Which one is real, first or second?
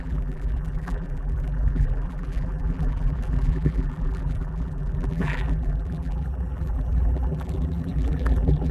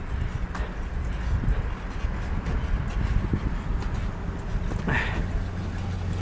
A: second